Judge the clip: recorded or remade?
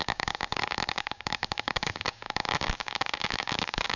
remade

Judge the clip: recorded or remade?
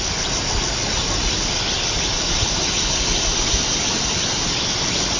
recorded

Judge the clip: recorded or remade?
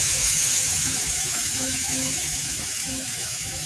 remade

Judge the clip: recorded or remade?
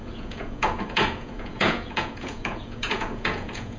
remade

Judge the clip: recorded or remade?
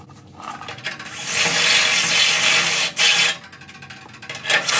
recorded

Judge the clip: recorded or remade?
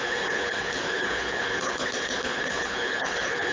remade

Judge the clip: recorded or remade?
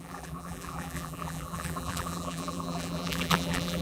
remade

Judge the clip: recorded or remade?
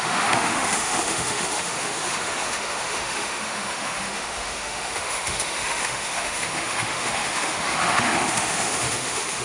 remade